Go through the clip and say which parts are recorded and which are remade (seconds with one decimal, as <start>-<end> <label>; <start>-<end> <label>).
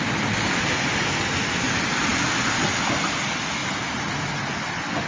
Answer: 0.0-5.1 recorded